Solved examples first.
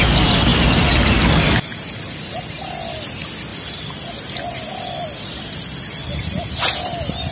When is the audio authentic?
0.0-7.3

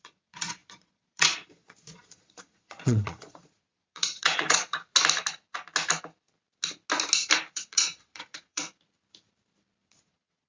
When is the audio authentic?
4.7-7.5; 8.6-9.8

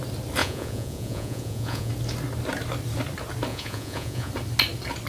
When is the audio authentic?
0.0-0.4; 1.9-3.5; 4.3-5.1

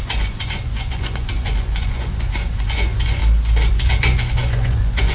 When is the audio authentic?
3.2-3.7